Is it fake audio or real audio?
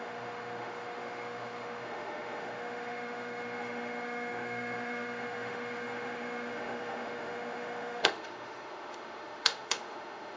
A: fake